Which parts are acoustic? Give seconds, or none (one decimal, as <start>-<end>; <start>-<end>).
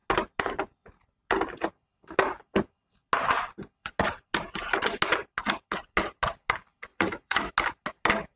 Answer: 0.0-6.9; 7.5-8.4